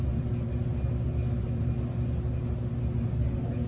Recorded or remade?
recorded